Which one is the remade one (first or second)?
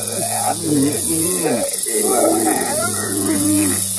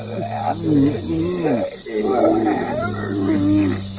first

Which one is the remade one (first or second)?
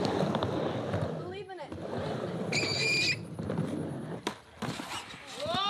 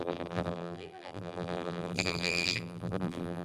second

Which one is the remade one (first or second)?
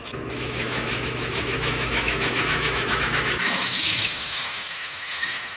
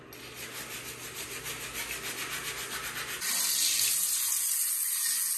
first